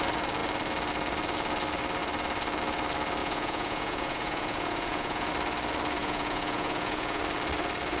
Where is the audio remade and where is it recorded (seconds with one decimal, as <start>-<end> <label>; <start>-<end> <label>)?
0.0-3.2 recorded; 3.2-5.3 remade; 5.3-6.0 recorded; 6.0-7.2 remade; 7.2-8.0 recorded